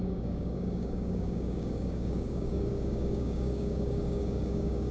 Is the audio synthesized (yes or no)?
yes